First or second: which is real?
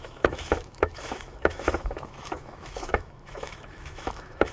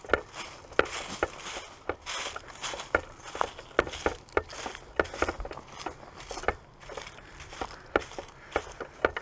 second